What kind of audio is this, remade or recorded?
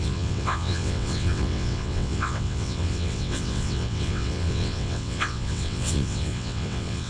remade